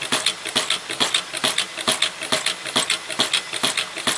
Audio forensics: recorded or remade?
recorded